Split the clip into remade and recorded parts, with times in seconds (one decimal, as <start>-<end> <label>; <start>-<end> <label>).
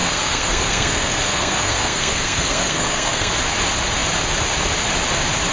0.0-3.3 remade; 3.3-5.5 recorded